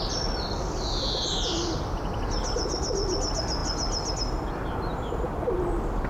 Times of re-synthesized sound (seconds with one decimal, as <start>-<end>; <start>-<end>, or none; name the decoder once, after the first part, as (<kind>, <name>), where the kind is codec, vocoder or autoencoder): none